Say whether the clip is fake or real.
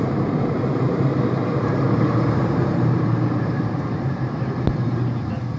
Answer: fake